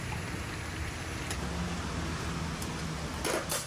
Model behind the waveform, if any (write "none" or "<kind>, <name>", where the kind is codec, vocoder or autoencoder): none